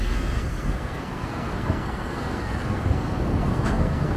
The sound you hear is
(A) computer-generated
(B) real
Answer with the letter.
A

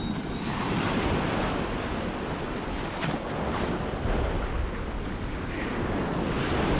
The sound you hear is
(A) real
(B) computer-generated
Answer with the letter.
A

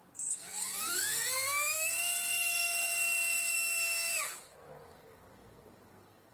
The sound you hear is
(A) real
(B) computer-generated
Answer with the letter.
B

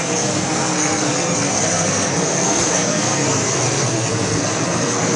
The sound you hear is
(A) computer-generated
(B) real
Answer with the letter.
A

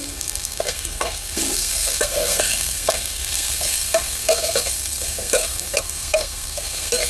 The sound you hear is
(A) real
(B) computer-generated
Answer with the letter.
B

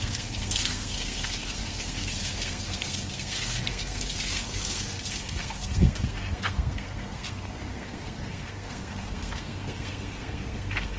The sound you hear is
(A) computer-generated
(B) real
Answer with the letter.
A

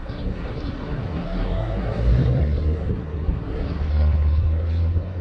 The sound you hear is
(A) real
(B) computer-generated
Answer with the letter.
B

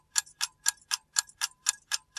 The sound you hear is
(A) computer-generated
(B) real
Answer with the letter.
B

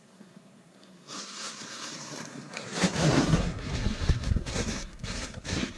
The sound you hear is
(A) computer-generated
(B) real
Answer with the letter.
A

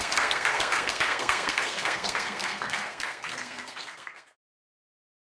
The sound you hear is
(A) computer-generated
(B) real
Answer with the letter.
A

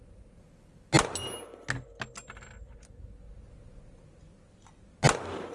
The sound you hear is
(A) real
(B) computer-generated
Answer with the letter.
A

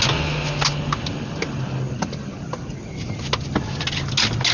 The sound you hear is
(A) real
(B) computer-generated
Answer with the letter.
A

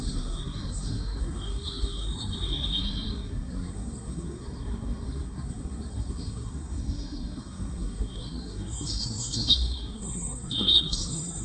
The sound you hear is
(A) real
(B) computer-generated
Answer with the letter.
B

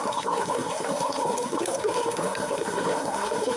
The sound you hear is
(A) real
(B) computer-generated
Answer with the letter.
B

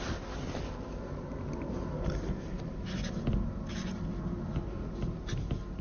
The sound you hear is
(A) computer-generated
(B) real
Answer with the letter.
B